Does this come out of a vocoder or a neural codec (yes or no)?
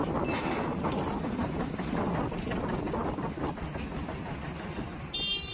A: no